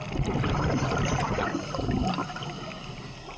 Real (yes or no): yes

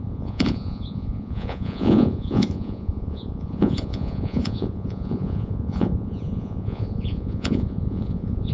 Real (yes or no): no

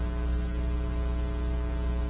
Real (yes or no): yes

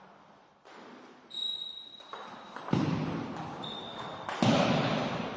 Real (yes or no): no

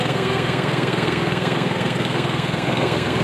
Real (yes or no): no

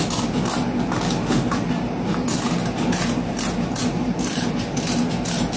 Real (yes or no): yes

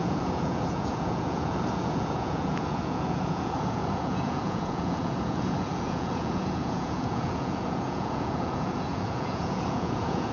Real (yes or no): no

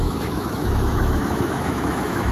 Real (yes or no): no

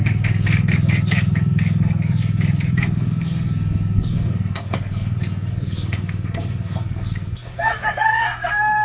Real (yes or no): no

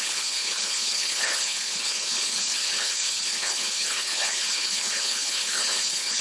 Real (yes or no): no